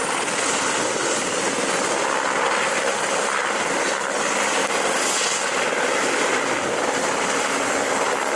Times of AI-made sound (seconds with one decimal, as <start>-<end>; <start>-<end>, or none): none